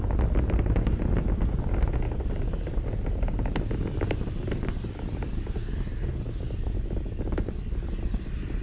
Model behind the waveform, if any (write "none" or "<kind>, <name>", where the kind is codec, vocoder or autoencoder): none